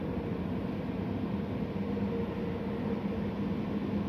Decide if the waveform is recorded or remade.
recorded